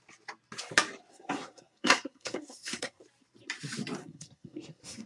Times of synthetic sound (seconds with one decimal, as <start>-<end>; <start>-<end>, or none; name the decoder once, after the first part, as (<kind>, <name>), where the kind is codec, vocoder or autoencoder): 1.1-3.0 (codec, SNAC); 4.0-5.1